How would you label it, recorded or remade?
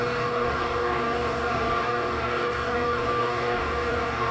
remade